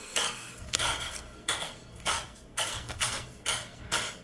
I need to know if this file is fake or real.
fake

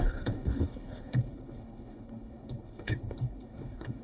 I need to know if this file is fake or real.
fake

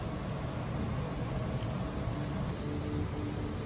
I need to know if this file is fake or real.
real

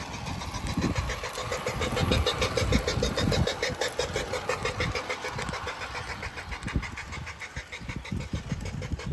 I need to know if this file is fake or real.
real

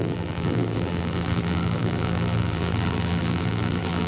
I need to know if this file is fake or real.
fake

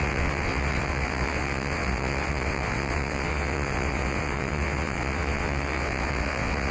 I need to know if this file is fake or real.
fake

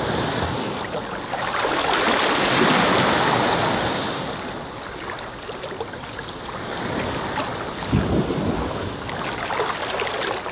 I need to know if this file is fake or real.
real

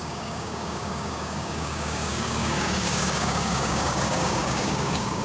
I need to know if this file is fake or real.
fake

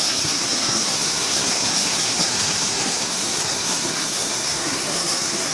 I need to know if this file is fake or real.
fake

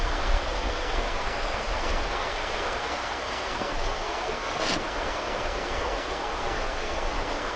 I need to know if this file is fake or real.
fake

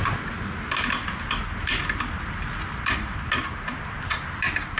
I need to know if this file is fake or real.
real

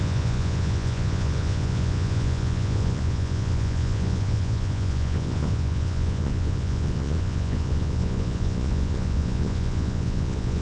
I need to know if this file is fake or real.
fake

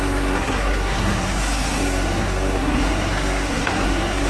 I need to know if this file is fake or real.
fake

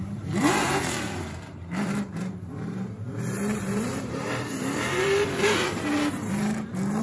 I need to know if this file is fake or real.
fake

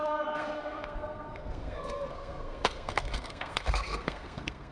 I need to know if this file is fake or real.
fake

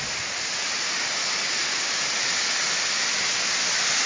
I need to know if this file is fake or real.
real